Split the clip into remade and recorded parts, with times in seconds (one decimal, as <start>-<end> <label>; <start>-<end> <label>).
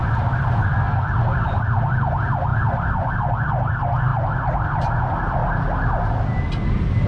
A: 0.0-4.1 recorded; 4.1-5.0 remade; 5.0-7.1 recorded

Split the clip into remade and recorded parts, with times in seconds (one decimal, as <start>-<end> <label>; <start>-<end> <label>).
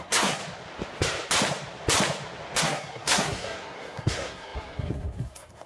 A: 0.0-0.4 remade; 0.4-2.6 recorded; 2.6-5.7 remade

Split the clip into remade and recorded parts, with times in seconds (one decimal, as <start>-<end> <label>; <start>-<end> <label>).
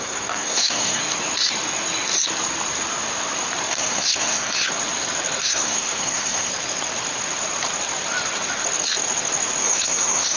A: 0.0-1.0 remade; 1.0-3.7 recorded; 3.7-4.7 remade; 4.7-5.4 recorded; 5.4-6.5 remade; 6.5-9.6 recorded; 9.6-10.4 remade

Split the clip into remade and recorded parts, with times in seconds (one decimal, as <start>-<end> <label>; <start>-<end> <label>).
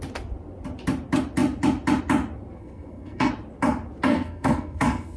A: 0.0-2.6 recorded; 2.6-3.3 remade; 3.3-4.1 recorded; 4.1-5.2 remade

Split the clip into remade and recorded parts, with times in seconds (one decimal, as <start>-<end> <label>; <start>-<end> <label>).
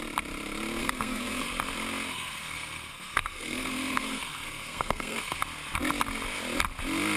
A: 0.0-0.8 recorded; 0.8-1.5 remade; 1.5-2.1 recorded; 2.1-5.4 remade; 5.4-7.2 recorded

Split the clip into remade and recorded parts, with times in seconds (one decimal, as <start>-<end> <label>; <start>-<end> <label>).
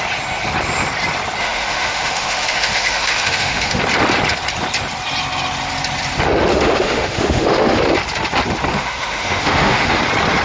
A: 0.0-1.4 recorded; 1.4-3.8 remade; 3.8-6.5 recorded; 6.5-7.8 remade; 7.8-8.7 recorded; 8.7-10.0 remade; 10.0-10.4 recorded